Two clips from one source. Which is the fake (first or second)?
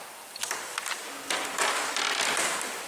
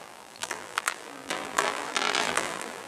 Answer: second